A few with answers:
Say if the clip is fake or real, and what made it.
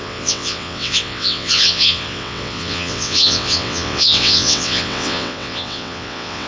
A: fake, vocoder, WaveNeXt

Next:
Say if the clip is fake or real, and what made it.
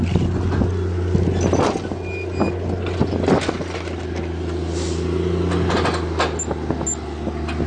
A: real